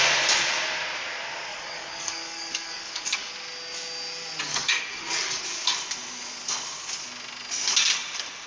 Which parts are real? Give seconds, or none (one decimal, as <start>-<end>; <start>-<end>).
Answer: 0.0-1.5; 3.3-4.5; 5.4-8.5